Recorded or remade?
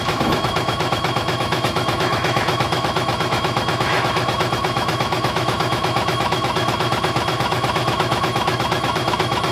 remade